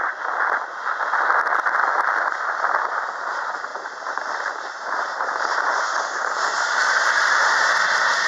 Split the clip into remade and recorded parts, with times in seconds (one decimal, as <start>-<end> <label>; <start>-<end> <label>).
0.0-3.7 recorded; 3.7-7.6 remade; 7.6-8.3 recorded

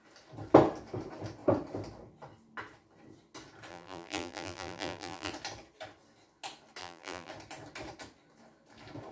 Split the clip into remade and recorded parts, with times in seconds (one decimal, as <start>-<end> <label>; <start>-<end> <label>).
0.0-3.7 recorded; 3.7-5.3 remade; 5.3-6.8 recorded; 6.8-7.3 remade; 7.3-9.1 recorded

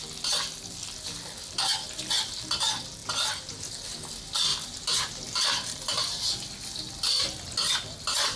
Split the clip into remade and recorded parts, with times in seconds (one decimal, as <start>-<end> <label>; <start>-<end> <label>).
0.0-4.5 recorded; 4.5-6.0 remade; 6.0-8.4 recorded

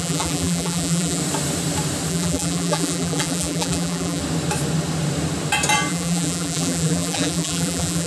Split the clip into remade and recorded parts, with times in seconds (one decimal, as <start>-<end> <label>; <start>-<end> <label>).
0.0-1.2 remade; 1.2-2.1 recorded; 2.1-4.2 remade; 4.2-5.9 recorded; 5.9-8.1 remade

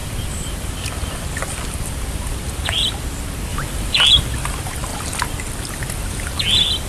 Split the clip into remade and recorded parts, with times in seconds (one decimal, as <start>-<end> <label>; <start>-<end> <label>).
0.0-2.9 remade; 2.9-3.5 recorded; 3.5-4.0 remade; 4.0-6.9 recorded